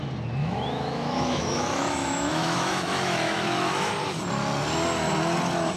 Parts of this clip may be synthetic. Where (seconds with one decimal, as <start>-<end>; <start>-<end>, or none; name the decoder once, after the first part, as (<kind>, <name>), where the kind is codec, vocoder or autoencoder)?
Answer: 0.4-3.9 (autoencoder, DAC-VAE)